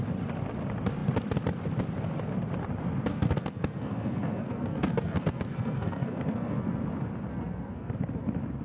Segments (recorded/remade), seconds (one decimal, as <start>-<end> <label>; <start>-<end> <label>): 0.0-3.1 recorded; 3.1-6.8 remade; 6.8-7.3 recorded; 7.3-7.9 remade; 7.9-8.6 recorded